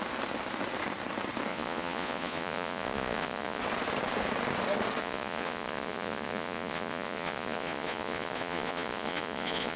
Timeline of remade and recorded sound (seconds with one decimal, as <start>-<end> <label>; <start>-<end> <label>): 0.0-1.5 recorded; 1.5-3.6 remade; 3.6-5.0 recorded; 5.0-9.8 remade